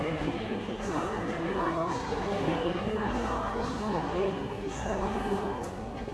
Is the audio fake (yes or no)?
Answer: yes